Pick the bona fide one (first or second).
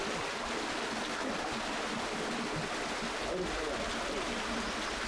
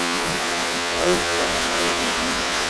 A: first